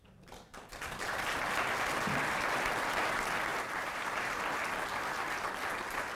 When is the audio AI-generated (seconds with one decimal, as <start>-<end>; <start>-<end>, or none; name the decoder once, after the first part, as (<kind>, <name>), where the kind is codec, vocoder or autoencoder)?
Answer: 3.5-4.4 (vocoder, BigVGAN v2)